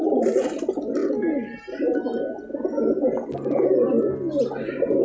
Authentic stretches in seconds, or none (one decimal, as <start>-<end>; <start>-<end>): 0.0-5.0